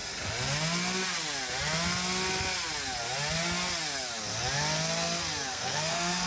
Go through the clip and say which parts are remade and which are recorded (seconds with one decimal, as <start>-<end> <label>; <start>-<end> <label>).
0.0-5.5 recorded; 5.5-6.3 remade

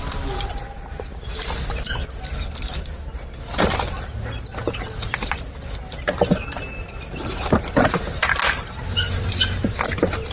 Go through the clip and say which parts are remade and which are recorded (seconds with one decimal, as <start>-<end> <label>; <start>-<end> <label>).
0.0-10.3 recorded

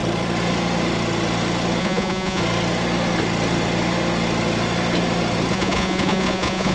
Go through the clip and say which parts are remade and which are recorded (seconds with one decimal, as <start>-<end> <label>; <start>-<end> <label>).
0.0-1.8 recorded; 1.8-2.4 remade; 2.4-5.5 recorded; 5.5-6.7 remade

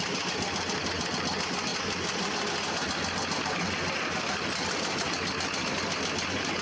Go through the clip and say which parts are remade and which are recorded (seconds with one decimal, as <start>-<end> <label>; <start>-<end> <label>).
0.0-6.6 recorded

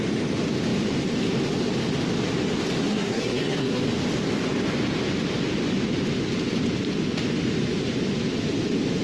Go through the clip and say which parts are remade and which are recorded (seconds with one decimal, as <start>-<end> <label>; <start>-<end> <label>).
0.0-2.8 recorded; 2.8-3.8 remade; 3.8-9.0 recorded

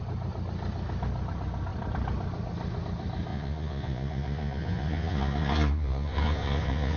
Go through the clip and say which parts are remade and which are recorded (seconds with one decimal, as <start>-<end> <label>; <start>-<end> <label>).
0.0-3.3 recorded; 3.3-7.0 remade